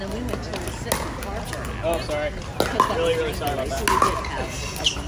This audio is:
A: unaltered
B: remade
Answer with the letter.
A